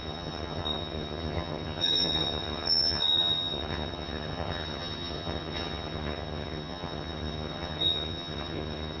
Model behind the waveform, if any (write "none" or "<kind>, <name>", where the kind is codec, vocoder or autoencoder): vocoder, HiFi-GAN